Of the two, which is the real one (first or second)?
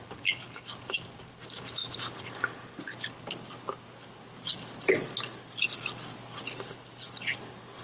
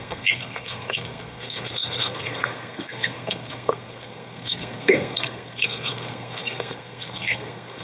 first